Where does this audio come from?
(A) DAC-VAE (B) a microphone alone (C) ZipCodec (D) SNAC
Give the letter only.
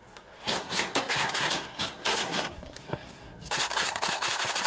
D